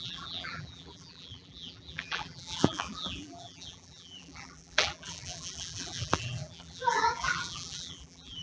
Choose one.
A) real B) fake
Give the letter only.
B